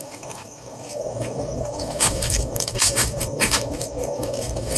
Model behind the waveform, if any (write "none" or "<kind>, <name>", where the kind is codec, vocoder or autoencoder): codec, DAC